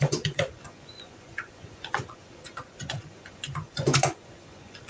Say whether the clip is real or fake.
fake